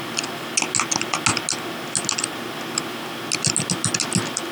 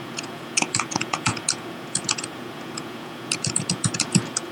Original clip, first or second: first